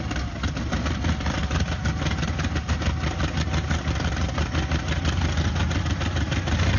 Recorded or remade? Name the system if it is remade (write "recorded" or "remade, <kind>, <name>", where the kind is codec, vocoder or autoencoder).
recorded